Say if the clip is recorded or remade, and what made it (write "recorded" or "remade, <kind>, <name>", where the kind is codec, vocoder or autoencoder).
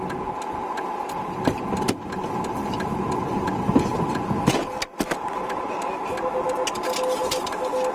recorded